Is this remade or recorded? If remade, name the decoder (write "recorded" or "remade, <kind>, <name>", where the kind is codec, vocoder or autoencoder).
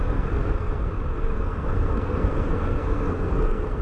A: remade, codec, SNAC